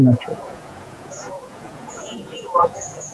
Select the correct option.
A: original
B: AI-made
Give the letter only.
B